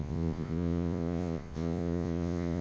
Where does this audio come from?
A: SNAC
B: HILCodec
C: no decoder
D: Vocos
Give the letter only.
D